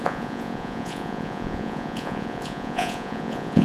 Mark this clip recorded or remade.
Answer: remade